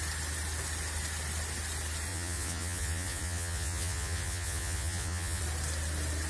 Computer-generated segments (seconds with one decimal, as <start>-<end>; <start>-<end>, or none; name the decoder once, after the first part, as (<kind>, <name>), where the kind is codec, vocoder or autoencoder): 2.1-5.4 (vocoder, Vocos)